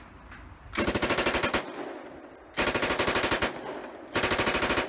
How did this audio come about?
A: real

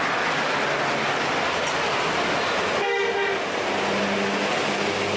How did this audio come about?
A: real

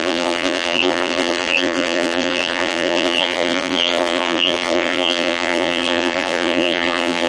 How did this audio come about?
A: fake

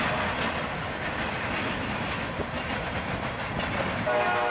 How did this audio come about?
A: real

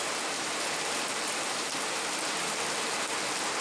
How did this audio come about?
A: real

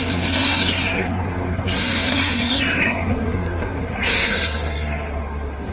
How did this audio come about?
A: fake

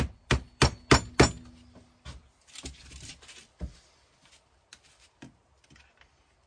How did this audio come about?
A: real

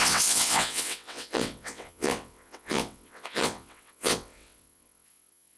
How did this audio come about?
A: fake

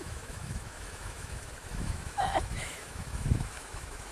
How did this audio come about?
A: fake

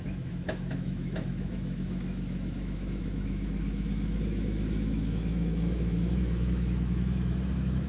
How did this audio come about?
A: fake